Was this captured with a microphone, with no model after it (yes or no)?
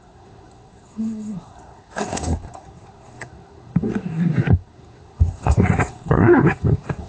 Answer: no